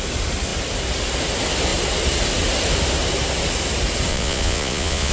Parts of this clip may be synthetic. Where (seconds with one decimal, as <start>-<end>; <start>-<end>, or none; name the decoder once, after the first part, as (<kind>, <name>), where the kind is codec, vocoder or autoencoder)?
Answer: 4.1-5.1 (vocoder, Vocos)